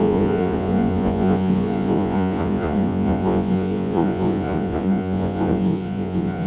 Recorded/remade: remade